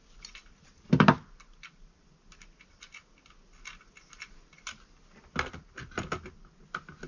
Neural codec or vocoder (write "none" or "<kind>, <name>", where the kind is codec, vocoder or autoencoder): none